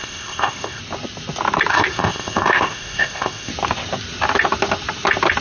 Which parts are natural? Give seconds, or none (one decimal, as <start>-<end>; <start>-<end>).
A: 0.8-1.7; 3.5-5.4